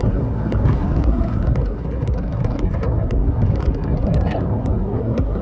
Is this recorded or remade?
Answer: remade